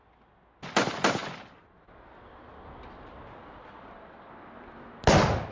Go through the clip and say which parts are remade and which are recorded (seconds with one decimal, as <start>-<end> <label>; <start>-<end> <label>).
0.0-5.5 recorded